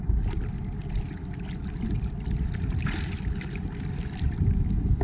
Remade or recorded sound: recorded